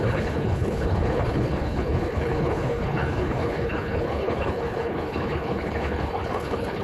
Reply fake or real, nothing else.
fake